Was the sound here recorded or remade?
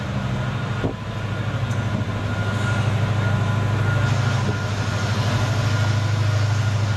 recorded